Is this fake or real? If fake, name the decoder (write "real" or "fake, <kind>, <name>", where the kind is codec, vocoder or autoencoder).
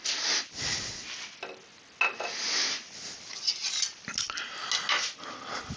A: real